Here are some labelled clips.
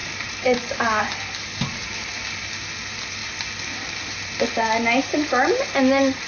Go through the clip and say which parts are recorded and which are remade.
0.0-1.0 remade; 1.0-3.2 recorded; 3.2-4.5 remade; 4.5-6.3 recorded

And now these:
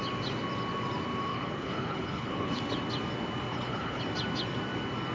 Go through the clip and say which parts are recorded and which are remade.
0.0-1.3 recorded; 1.3-2.6 remade; 2.6-3.5 recorded; 3.5-4.0 remade; 4.0-5.1 recorded

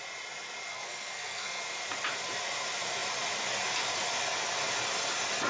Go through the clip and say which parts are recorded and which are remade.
0.0-0.7 recorded; 0.7-1.6 remade; 1.6-5.5 recorded

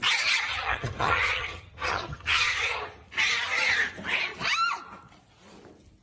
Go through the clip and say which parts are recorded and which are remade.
0.0-0.5 recorded; 0.5-2.8 remade; 2.8-6.0 recorded

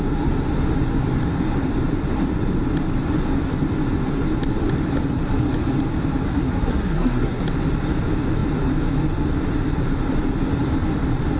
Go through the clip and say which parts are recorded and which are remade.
0.0-6.3 recorded; 6.3-7.4 remade; 7.4-11.4 recorded

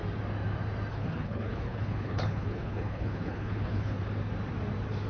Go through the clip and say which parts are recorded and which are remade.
0.0-0.9 recorded; 0.9-4.0 remade; 4.0-5.1 recorded

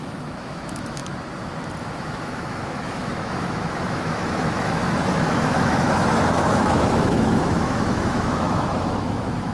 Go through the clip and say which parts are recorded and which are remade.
0.0-1.0 remade; 1.0-1.8 recorded; 1.8-9.5 remade